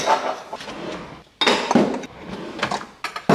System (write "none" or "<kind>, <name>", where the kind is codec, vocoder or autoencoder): none